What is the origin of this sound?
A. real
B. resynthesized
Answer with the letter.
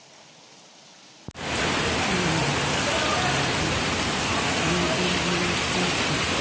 A